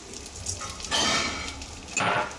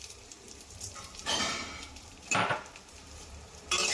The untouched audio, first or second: first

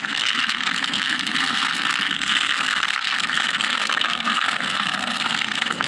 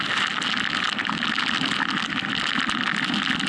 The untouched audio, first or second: second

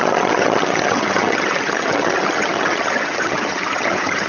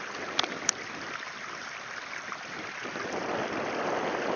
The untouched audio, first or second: second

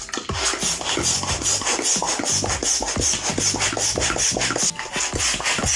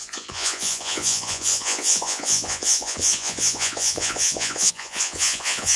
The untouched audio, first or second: first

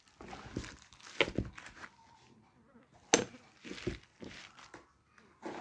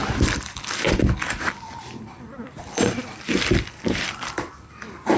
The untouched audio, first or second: first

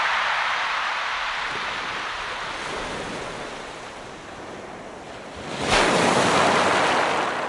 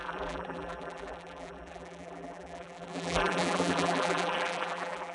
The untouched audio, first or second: first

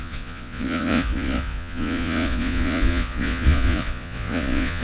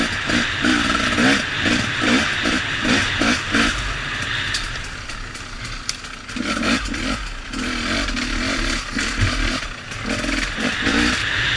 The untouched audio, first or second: second